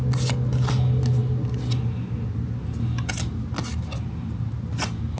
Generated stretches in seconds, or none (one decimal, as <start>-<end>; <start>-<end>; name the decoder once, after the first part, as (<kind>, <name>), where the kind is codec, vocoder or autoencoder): none